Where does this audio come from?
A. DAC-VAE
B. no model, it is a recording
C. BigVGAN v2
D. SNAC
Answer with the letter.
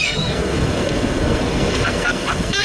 D